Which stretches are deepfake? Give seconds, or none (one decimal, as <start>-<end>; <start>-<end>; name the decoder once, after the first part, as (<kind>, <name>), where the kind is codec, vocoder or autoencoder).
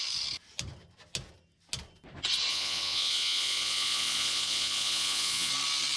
2.5-5.5 (vocoder, Vocos)